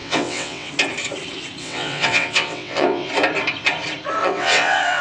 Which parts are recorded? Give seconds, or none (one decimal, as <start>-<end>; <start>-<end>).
0.7-1.6; 3.1-4.2